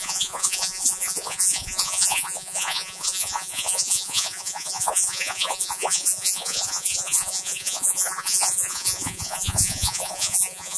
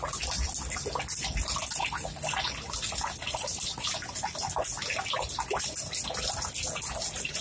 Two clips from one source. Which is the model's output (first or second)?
first